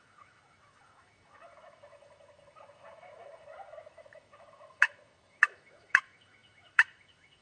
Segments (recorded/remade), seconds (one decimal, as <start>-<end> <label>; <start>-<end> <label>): 0.0-7.4 remade